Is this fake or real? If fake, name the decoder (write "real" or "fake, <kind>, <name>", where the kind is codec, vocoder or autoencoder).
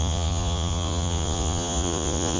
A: fake, vocoder, Vocos